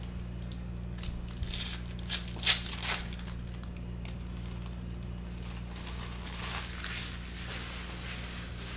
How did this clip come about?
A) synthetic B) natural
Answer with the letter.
B